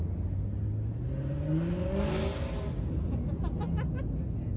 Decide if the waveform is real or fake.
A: real